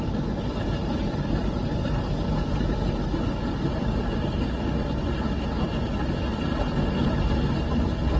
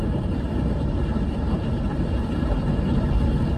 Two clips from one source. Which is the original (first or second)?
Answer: first